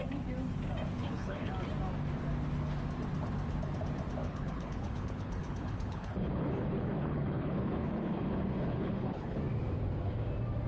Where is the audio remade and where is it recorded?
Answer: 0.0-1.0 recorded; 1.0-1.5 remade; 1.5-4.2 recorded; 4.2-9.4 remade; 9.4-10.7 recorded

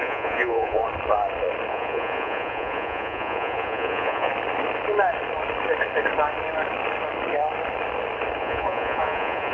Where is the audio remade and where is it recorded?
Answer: 0.0-0.8 remade; 0.8-1.7 recorded; 1.7-4.3 remade; 4.3-8.4 recorded; 8.4-9.5 remade

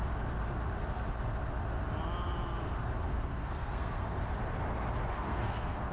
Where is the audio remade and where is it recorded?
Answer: 0.0-3.1 recorded; 3.1-4.2 remade; 4.2-5.1 recorded; 5.1-5.9 remade

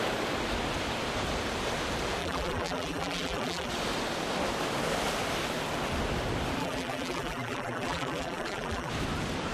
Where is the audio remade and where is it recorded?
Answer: 0.0-2.2 recorded; 2.2-3.7 remade; 3.7-6.6 recorded; 6.6-8.9 remade; 8.9-9.5 recorded

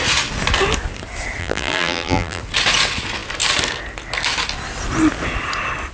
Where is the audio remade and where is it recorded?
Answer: 0.0-1.4 recorded; 1.4-2.4 remade; 2.4-5.9 recorded

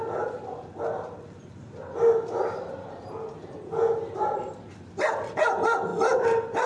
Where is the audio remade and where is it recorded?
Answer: 0.0-6.7 recorded